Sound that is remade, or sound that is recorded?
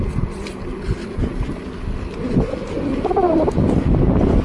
recorded